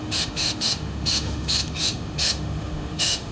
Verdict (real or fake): fake